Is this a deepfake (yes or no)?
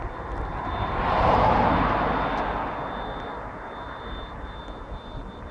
no